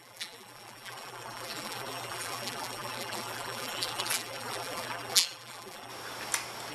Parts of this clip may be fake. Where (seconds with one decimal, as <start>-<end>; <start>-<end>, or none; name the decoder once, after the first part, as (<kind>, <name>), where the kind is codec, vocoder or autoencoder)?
0.0-5.9 (vocoder, BigVGAN v2)